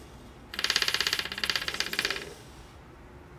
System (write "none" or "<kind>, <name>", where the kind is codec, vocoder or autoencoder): none